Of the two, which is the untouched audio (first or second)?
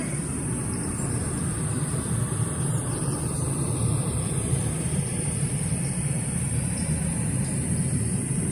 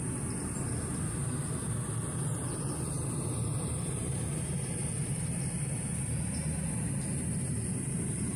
second